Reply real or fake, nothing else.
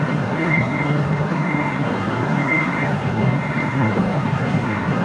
fake